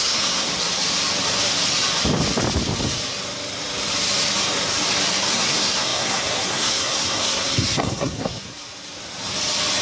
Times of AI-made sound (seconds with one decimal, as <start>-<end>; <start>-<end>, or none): 0.0-0.5; 5.3-8.5